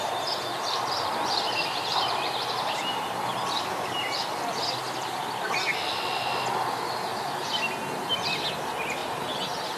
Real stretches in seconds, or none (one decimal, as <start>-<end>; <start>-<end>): 0.0-0.5; 4.2-9.0